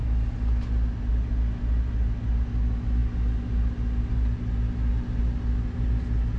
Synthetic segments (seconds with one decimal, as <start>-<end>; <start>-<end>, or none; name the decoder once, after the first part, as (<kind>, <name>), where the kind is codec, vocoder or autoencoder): none